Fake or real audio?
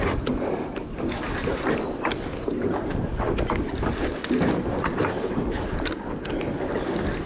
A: real